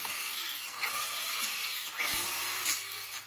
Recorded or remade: remade